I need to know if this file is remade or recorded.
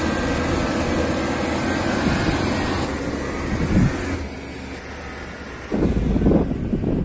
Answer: recorded